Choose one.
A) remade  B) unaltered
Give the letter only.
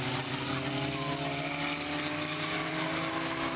B